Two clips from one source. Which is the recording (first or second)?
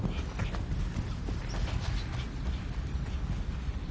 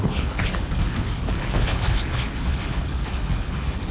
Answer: first